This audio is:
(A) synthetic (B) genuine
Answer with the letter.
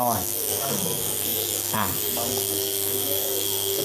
A